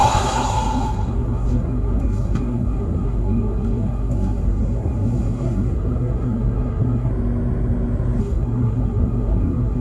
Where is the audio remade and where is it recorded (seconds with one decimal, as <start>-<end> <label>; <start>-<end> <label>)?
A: 0.0-7.1 remade; 7.1-8.2 recorded; 8.2-9.8 remade